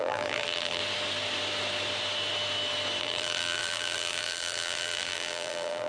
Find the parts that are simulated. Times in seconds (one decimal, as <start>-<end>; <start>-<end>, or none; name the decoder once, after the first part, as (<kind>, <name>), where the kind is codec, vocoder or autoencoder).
0.0-0.8 (vocoder, BigVGAN v2); 3.0-5.9